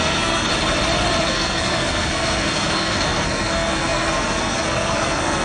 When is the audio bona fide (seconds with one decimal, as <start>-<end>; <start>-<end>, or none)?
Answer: 0.5-1.2